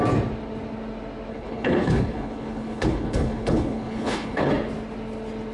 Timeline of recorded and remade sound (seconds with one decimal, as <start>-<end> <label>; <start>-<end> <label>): 0.0-1.3 recorded; 1.3-4.5 remade; 4.5-5.5 recorded